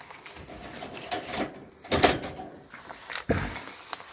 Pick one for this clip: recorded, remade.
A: recorded